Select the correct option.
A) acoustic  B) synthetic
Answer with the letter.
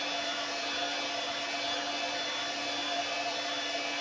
A